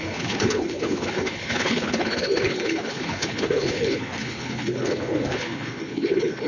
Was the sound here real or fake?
fake